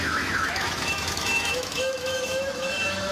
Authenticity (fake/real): fake